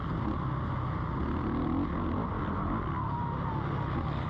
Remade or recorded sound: recorded